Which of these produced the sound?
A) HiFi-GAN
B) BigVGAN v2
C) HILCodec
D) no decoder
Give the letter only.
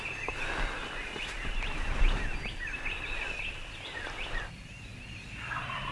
B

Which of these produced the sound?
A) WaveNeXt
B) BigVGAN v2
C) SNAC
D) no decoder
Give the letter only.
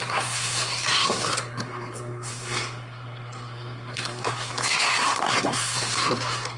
C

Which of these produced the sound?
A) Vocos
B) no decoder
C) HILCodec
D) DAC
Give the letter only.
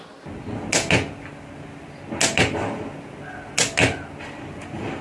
B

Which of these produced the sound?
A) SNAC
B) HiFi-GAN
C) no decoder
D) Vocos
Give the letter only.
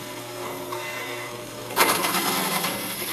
A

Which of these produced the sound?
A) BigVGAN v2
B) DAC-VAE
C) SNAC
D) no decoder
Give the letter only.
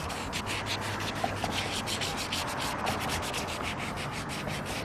D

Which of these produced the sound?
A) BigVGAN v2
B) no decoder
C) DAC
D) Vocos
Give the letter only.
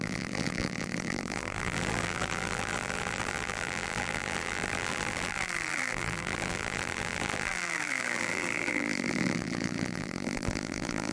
A